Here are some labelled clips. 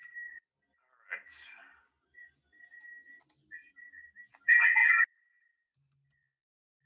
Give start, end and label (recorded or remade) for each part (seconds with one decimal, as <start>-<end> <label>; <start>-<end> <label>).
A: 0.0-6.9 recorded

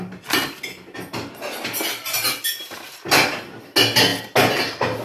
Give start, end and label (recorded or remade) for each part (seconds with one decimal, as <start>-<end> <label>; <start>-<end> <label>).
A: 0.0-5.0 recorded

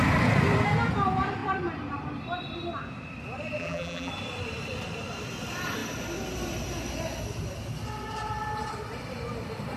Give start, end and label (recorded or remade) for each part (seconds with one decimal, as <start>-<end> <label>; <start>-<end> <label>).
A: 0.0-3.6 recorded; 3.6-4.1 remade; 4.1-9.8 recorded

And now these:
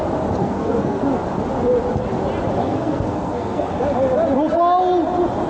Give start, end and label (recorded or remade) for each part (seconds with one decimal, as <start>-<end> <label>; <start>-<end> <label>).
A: 0.0-0.4 recorded; 0.4-1.0 remade; 1.0-2.6 recorded; 2.6-3.7 remade; 3.7-5.5 recorded

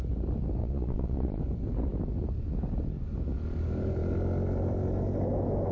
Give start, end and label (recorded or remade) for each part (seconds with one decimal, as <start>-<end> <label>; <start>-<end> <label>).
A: 0.0-0.6 recorded; 0.6-1.4 remade; 1.4-5.7 recorded

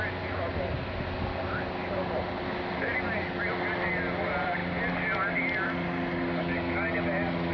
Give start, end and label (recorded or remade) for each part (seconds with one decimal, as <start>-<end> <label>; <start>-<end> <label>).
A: 0.0-7.5 recorded